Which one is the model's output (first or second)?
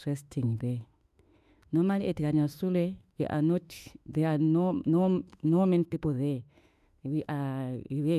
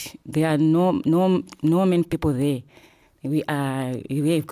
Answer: first